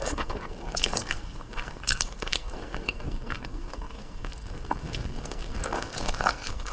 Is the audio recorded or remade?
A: remade